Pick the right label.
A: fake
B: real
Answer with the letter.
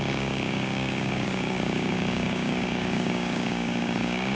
A